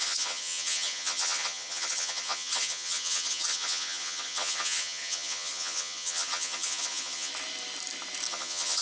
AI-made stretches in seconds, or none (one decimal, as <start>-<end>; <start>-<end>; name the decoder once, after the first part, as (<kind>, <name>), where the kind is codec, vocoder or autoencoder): 0.0-7.3 (vocoder, HiFi-GAN); 8.3-8.8